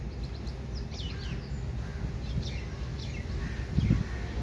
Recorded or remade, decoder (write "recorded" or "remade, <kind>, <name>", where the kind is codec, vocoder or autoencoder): recorded